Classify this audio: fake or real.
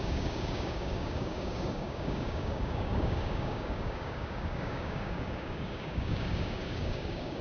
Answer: fake